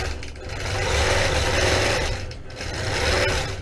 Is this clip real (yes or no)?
yes